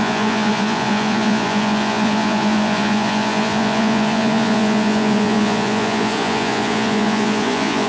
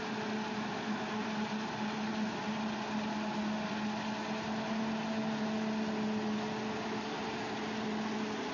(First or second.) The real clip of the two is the second